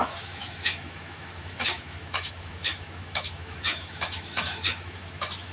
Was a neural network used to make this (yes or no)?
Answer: yes